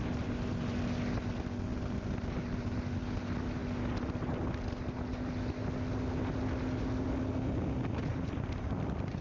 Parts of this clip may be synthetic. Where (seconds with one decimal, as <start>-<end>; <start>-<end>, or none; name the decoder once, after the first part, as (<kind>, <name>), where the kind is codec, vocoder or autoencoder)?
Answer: 8.1-9.2 (vocoder, BigVGAN v2)